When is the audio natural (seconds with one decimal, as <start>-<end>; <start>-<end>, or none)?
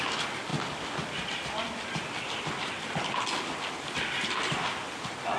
0.0-5.4